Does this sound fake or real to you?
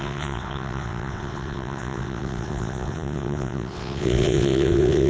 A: fake